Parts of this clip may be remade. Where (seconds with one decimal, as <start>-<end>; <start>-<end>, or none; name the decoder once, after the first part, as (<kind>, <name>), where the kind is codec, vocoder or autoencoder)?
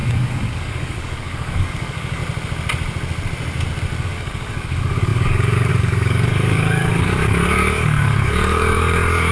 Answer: 0.0-2.2 (codec, DAC); 4.0-9.3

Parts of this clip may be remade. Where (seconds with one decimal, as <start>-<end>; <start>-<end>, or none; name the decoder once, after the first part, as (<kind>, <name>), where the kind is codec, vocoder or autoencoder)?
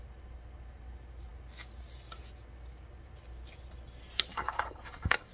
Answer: 4.3-5.3 (codec, DAC)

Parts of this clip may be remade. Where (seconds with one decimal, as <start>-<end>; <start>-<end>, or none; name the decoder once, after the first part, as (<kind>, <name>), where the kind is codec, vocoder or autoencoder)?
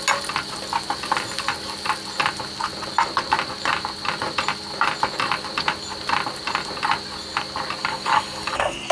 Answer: 7.8-8.9 (codec, DAC)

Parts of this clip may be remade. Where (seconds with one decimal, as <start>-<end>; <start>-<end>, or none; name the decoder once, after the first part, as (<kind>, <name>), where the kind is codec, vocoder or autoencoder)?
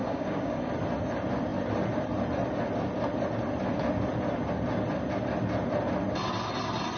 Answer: 0.0-0.7 (codec, DAC)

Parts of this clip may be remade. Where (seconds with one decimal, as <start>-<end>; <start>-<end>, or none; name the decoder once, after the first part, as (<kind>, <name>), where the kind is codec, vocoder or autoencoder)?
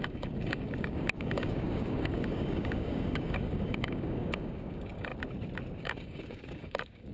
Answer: 0.0-5.1 (codec, DAC); 5.8-7.1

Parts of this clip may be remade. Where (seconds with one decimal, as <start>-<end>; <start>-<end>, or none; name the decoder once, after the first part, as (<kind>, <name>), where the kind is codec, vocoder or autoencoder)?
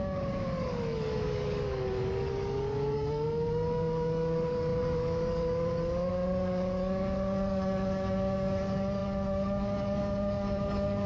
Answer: 0.0-11.1 (codec, DAC)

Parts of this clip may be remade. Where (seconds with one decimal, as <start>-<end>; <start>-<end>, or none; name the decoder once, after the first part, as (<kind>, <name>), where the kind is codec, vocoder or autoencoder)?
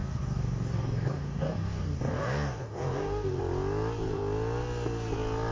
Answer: 0.0-3.3 (codec, DAC)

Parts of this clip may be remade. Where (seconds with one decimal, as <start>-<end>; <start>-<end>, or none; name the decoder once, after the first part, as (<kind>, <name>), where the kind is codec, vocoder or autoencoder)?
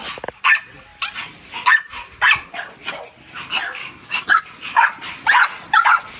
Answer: 3.8-4.4 (codec, DAC)